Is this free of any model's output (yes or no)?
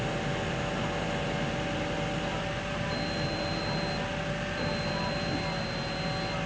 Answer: yes